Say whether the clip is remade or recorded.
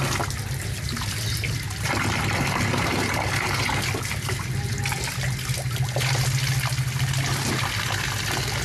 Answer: recorded